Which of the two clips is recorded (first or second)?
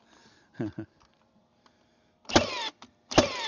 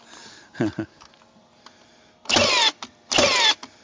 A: second